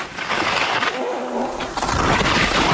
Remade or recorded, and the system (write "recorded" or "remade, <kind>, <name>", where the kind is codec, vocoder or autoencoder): recorded